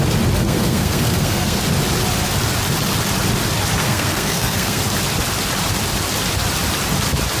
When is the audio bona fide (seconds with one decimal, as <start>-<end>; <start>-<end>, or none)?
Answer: 0.0-0.4; 1.7-3.8; 4.8-7.4